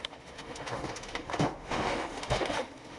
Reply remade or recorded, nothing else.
remade